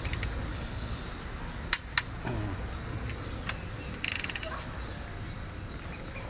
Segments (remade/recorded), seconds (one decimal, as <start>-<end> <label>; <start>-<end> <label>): 0.0-0.5 recorded; 0.5-1.0 remade; 1.0-6.3 recorded